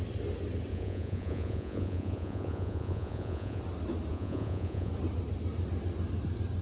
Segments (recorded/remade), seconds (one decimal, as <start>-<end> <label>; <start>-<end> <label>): 0.0-0.7 recorded; 0.7-3.6 remade; 3.6-4.1 recorded; 4.1-4.9 remade; 4.9-6.6 recorded

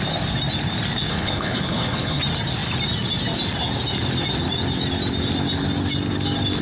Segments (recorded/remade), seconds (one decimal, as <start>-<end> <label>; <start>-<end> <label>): 0.0-1.1 recorded; 1.1-2.2 remade; 2.2-6.6 recorded

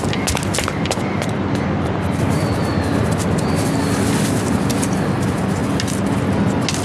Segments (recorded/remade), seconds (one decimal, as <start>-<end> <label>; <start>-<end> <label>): 0.0-6.8 recorded

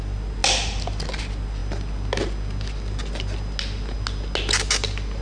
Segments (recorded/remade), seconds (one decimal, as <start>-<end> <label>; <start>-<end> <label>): 0.0-5.2 recorded

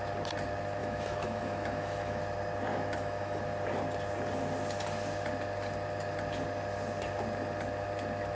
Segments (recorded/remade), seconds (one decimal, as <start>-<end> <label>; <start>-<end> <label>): 0.0-0.8 recorded; 0.8-2.2 remade; 2.2-2.7 recorded; 2.7-3.4 remade; 3.4-8.3 recorded